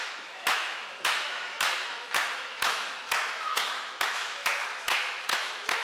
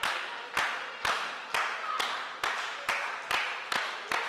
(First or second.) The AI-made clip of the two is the first